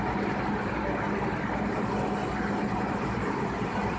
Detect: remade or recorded recorded